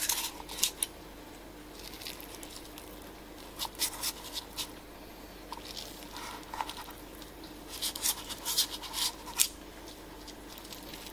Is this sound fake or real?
real